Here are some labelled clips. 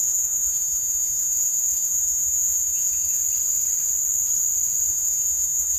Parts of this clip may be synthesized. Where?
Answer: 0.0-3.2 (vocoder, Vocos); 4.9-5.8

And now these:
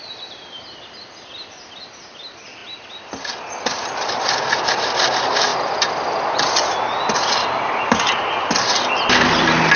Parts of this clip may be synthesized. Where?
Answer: none